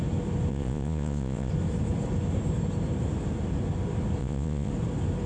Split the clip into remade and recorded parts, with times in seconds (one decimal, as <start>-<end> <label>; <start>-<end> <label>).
0.0-0.5 recorded; 0.5-1.5 remade; 1.5-4.2 recorded; 4.2-4.7 remade; 4.7-5.3 recorded